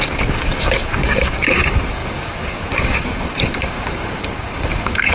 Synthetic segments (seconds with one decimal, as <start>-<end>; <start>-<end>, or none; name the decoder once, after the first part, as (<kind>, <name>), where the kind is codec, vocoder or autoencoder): 0.0-5.1 (codec, DAC)